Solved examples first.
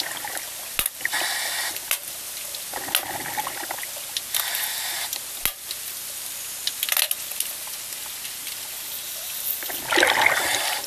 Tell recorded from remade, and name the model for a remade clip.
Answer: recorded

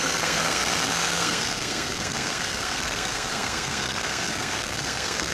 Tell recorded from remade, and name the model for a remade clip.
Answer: remade, codec, SNAC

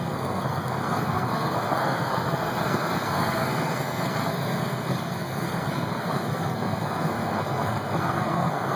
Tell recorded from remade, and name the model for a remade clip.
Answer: remade, codec, SNAC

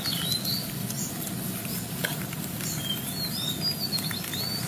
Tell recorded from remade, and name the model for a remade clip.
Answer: recorded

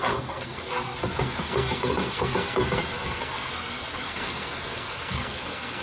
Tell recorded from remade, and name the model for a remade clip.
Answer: remade, codec, SNAC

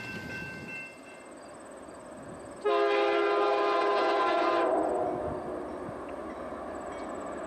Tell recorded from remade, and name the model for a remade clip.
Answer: recorded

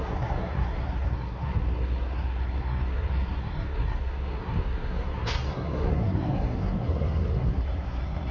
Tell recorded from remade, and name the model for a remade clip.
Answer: remade, codec, SNAC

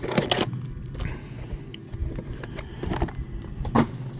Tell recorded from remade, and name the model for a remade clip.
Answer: recorded